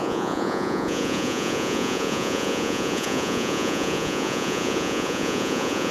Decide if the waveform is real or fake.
fake